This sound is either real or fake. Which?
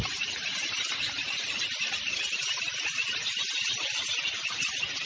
real